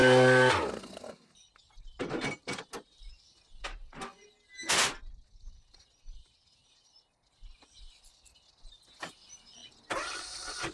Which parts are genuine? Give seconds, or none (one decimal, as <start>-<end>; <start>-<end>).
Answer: 0.0-10.7